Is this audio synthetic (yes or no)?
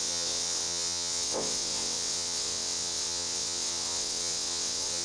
yes